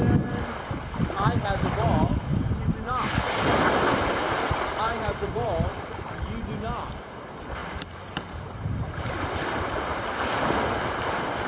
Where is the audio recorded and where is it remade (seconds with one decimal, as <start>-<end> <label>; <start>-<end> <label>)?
0.0-2.3 recorded; 2.3-2.9 remade; 2.9-3.9 recorded; 3.9-5.8 remade; 5.8-7.6 recorded; 7.6-9.0 remade; 9.0-11.5 recorded